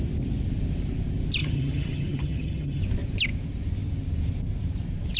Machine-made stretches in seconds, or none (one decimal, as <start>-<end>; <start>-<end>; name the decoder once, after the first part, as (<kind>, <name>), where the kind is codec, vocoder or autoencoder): 1.4-2.8 (vocoder, HiFi-GAN)

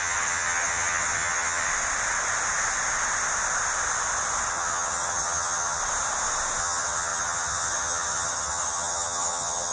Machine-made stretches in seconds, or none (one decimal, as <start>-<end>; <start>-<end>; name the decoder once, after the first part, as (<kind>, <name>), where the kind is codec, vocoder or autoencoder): 0.0-1.7 (vocoder, HiFi-GAN); 4.5-5.8; 6.6-9.7

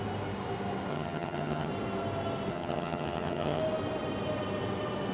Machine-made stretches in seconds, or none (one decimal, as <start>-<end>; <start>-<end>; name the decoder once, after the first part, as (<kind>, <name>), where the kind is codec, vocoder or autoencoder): 0.9-1.7 (vocoder, HiFi-GAN); 2.5-3.6